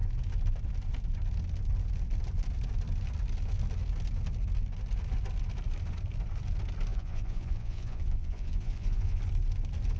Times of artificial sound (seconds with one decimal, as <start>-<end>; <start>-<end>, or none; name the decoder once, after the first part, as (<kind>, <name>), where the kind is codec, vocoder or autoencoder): 6.9-9.2 (vocoder, Vocos)

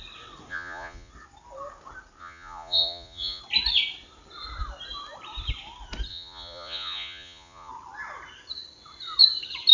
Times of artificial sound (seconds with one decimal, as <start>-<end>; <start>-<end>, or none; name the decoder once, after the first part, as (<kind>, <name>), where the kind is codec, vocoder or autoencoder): 0.5-1.1 (vocoder, Vocos); 2.2-3.4; 6.1-7.7